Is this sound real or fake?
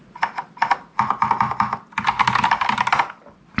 real